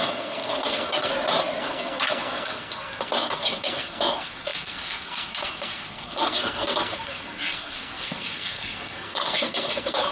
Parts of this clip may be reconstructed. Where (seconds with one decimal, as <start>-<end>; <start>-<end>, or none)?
0.0-1.1; 1.6-10.1